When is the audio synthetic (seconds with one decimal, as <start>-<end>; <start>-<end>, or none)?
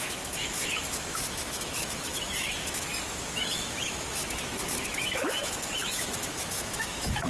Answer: 0.0-7.3